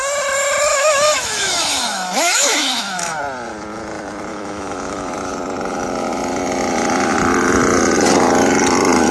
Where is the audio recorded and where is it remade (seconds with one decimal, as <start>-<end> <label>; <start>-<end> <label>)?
0.0-0.7 recorded; 0.7-3.2 remade; 3.2-4.3 recorded; 4.3-5.1 remade; 5.1-9.1 recorded